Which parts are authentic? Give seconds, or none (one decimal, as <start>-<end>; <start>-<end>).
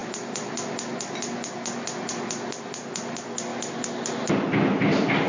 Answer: 0.0-5.3